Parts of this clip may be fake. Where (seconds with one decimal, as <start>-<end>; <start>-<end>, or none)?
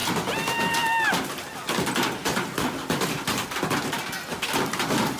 none